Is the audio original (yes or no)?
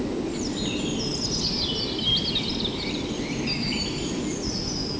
yes